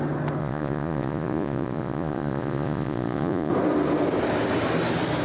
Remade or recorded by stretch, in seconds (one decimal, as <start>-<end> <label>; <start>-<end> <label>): 0.0-0.4 recorded; 0.4-3.5 remade; 3.5-5.2 recorded